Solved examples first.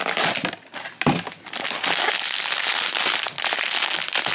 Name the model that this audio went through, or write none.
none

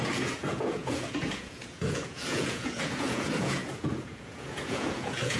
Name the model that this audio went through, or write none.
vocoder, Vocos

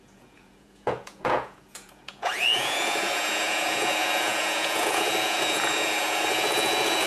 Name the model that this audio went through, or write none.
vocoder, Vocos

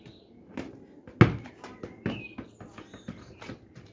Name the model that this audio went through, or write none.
none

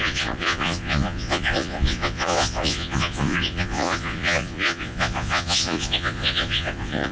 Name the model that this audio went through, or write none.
vocoder, Vocos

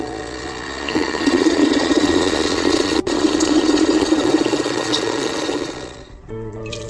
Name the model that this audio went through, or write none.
vocoder, Vocos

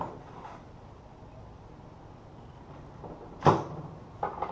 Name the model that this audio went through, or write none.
none